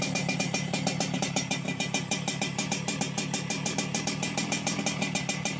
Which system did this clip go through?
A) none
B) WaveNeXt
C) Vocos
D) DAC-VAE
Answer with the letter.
A